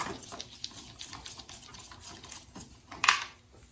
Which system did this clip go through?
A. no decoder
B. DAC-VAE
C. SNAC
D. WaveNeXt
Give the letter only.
A